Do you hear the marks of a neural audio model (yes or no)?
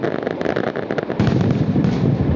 no